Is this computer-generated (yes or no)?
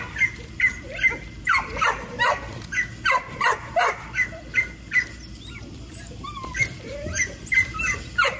no